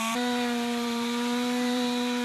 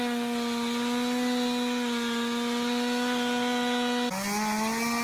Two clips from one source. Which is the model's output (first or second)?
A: first